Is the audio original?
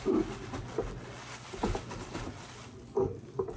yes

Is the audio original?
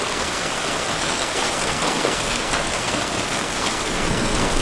no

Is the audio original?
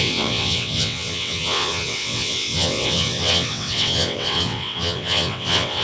no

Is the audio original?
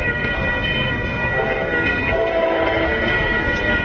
no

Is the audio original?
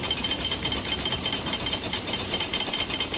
no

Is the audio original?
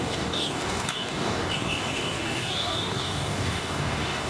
no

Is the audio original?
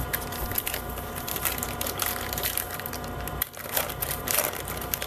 no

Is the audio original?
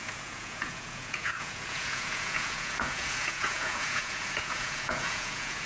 no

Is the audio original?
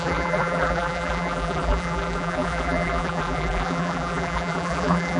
no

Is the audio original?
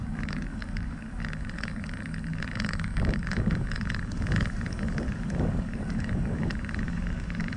no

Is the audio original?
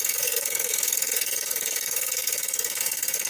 no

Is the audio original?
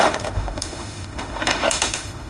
no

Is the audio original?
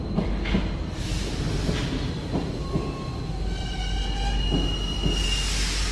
yes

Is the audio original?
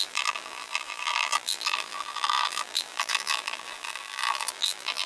no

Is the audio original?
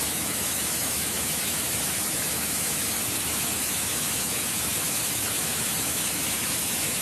no